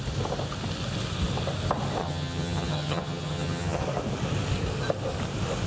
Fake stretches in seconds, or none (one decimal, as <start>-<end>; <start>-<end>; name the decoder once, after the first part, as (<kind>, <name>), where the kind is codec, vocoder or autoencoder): 2.0-3.8 (vocoder, HiFi-GAN)